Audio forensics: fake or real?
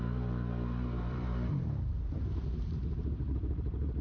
fake